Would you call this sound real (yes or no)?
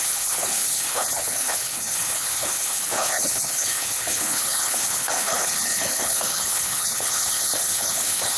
no